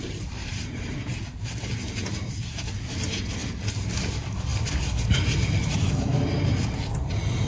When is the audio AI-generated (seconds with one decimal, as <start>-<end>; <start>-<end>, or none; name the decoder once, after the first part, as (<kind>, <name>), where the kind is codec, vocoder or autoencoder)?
0.4-1.4 (vocoder, BigVGAN v2)